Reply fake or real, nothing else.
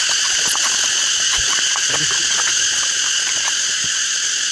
real